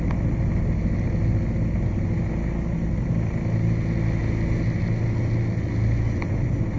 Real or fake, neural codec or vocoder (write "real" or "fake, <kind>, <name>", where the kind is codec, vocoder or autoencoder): real